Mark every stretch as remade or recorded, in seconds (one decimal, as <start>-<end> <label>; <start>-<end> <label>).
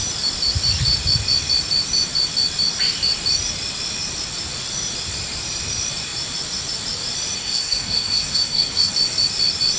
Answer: 0.0-7.4 recorded; 7.4-8.9 remade; 8.9-9.8 recorded